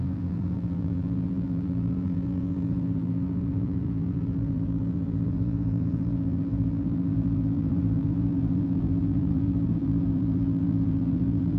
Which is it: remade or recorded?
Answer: remade